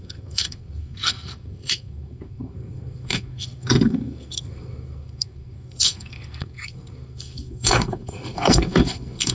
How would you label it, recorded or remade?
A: remade